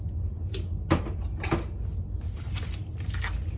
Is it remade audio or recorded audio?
recorded